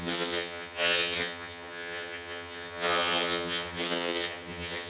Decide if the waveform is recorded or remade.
remade